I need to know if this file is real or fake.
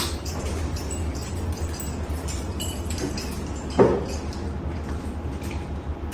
real